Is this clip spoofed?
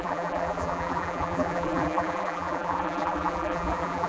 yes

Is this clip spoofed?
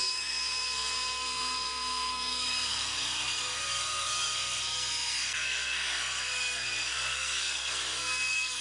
yes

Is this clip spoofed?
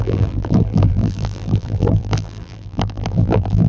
yes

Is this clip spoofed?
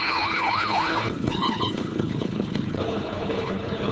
yes